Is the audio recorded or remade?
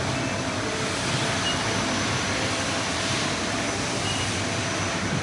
recorded